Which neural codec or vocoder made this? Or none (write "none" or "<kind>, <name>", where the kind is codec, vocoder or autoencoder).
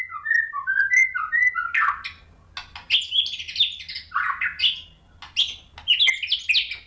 none